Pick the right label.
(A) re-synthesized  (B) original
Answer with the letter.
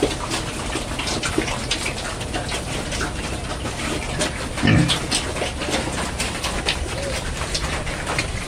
B